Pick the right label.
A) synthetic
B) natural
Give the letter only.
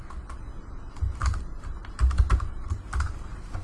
B